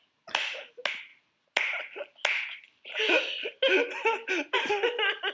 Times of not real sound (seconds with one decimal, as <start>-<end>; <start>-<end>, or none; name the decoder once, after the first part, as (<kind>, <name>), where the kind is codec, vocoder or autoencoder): none